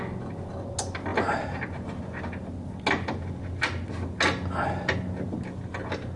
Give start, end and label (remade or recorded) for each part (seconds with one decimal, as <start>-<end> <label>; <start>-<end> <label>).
0.0-6.2 recorded